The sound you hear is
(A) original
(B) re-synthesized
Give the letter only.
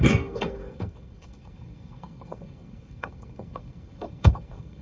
B